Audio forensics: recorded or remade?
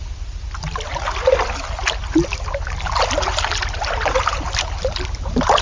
recorded